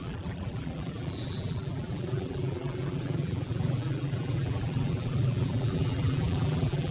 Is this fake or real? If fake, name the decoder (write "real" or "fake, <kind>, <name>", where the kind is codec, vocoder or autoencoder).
fake, vocoder, BigVGAN v2